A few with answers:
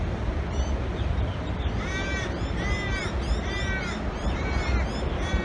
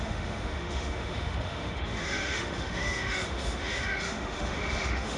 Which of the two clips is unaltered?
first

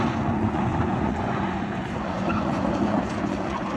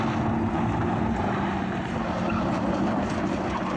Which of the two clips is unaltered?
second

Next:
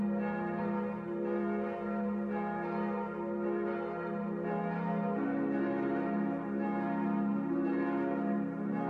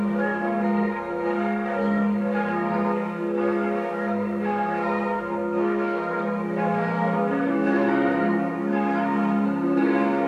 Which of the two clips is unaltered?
first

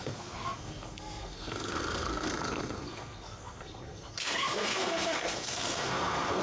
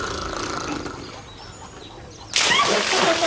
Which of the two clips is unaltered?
second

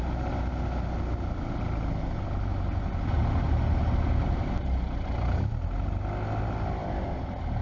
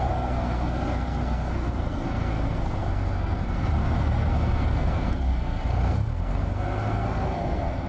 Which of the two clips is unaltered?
first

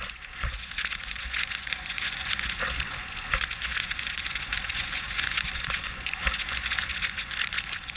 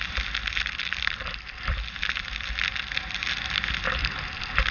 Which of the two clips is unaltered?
second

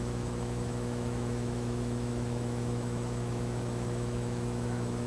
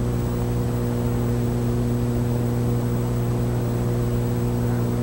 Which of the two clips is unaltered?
second